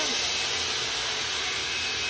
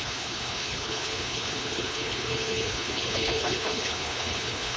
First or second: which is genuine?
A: first